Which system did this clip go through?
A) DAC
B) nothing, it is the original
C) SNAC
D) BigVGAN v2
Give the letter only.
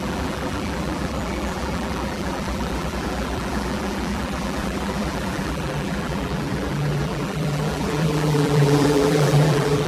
D